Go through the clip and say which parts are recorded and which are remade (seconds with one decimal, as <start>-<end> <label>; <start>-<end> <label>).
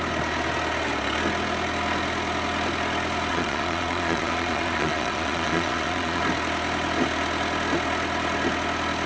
0.0-3.3 recorded; 3.3-6.2 remade; 6.2-9.1 recorded